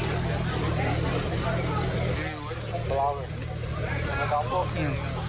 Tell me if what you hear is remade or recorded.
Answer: recorded